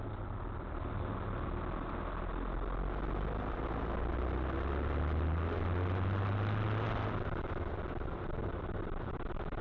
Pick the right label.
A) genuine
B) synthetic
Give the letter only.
A